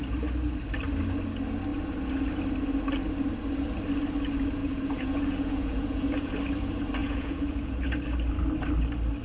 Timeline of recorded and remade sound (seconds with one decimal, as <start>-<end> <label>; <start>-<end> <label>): 0.0-4.6 recorded; 4.6-6.3 remade; 6.3-7.0 recorded; 7.0-7.8 remade; 7.8-9.2 recorded